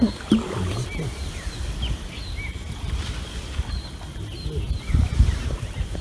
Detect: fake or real real